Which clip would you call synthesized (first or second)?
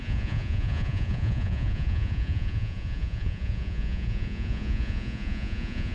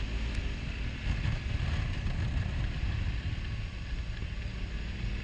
first